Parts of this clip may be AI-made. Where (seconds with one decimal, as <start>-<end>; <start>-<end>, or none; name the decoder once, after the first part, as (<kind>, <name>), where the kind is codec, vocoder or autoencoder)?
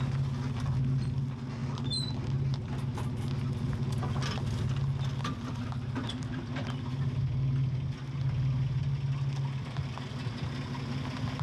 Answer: none